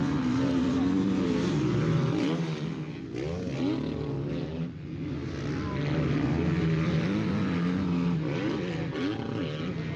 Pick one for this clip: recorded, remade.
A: recorded